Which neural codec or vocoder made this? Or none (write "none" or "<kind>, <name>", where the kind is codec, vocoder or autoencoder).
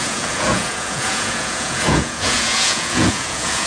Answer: vocoder, Vocos